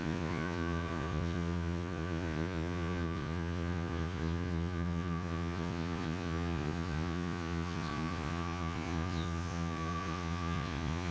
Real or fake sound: fake